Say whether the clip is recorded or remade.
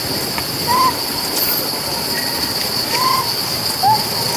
recorded